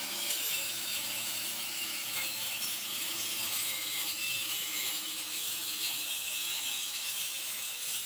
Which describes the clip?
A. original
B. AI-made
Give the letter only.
B